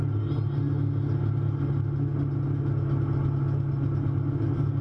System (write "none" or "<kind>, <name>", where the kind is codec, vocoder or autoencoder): none